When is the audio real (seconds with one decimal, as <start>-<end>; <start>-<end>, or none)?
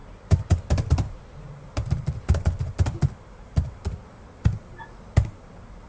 none